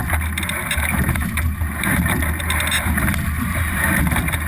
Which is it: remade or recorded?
recorded